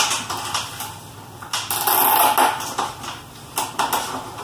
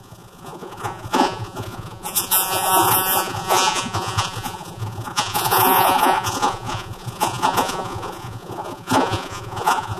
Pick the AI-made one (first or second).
second